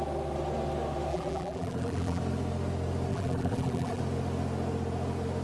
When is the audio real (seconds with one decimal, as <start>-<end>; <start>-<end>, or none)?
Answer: 0.0-1.1; 2.2-3.1; 4.0-5.4